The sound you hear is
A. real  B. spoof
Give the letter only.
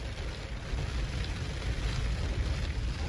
A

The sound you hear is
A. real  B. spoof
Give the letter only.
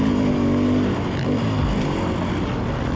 A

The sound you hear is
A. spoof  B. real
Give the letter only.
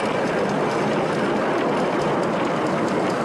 B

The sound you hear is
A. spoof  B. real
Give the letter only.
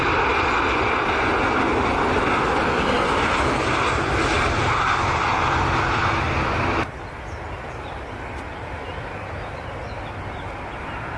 B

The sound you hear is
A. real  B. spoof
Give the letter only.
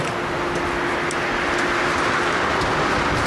A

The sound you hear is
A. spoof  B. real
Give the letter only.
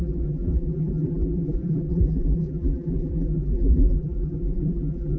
A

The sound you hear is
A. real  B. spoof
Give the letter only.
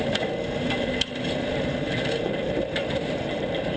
B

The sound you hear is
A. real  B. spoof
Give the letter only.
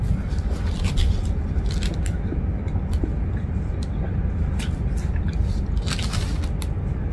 A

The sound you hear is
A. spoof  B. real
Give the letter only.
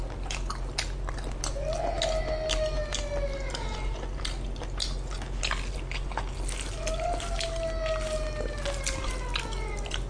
B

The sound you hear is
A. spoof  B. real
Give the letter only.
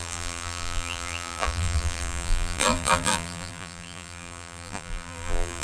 A